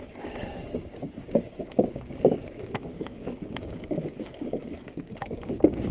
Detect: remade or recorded remade